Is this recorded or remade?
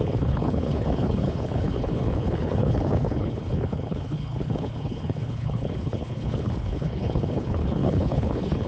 remade